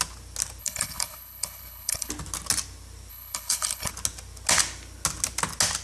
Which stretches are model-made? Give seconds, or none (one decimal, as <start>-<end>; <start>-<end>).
0.6-2.1; 3.1-3.9